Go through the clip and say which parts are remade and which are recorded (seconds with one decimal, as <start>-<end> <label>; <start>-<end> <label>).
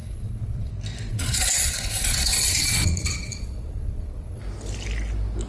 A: 0.0-0.7 remade; 0.7-1.1 recorded; 1.1-4.4 remade; 4.4-5.5 recorded